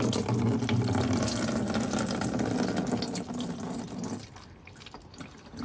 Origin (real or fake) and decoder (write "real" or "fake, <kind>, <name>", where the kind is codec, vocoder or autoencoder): real